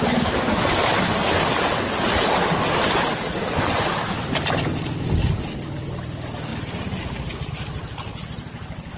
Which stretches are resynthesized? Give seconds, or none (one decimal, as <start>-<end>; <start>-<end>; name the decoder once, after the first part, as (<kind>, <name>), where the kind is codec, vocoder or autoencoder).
none